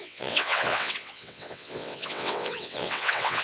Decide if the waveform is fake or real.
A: fake